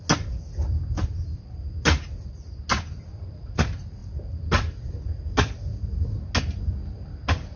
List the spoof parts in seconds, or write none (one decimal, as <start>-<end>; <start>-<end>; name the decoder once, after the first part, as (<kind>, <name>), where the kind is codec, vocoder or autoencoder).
none